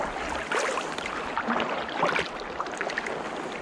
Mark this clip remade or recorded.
recorded